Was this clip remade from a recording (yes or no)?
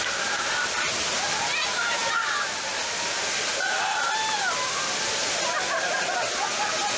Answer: no